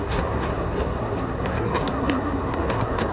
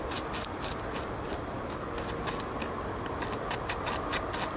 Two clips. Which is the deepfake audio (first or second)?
first